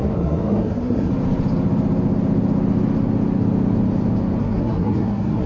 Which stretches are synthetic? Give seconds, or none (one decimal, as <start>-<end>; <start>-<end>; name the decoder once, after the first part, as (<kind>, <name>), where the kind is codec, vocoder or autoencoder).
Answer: 0.0-1.1 (codec, SNAC); 4.4-5.5